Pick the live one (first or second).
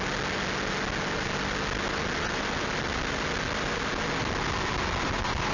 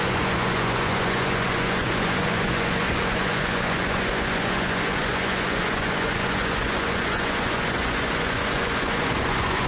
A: first